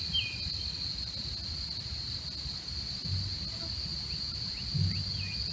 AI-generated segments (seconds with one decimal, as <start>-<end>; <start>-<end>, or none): none